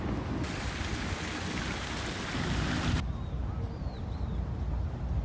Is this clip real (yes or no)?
yes